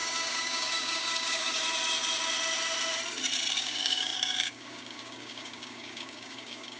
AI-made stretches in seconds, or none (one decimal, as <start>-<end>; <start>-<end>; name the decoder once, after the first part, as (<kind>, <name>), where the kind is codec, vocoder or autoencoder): 0.0-1.6 (codec, DAC); 3.5-6.8